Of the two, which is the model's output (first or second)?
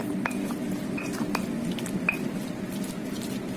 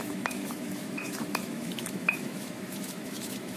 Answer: second